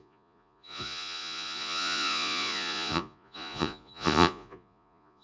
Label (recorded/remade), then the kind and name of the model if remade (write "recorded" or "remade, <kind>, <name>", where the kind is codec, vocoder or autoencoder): remade, vocoder, Vocos